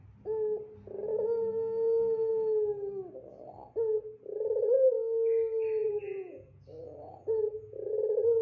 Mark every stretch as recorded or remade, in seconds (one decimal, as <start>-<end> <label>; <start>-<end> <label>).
0.0-5.8 recorded; 5.8-7.9 remade; 7.9-8.4 recorded